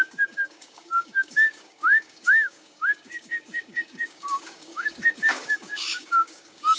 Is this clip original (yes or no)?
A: no